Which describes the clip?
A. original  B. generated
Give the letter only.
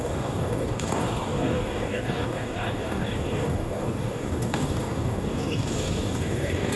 B